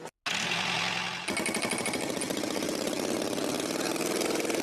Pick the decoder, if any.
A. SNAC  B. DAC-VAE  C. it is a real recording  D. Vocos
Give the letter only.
C